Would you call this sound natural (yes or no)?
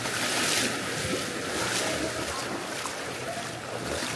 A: yes